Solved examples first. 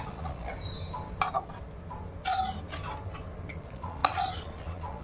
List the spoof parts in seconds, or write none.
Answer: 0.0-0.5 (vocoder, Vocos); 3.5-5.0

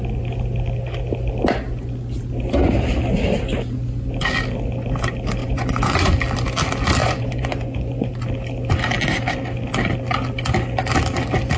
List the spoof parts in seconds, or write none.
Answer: 5.4-6.1 (vocoder, Vocos); 7.0-8.1

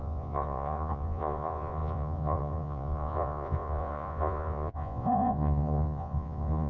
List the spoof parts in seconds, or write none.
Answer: 0.0-6.7 (vocoder, Vocos)